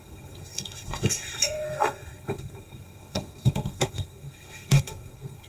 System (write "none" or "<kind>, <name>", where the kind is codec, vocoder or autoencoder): codec, SNAC